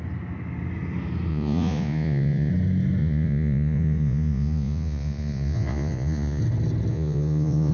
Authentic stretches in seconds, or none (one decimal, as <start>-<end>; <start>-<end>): 0.0-1.3; 2.5-3.0; 6.4-6.9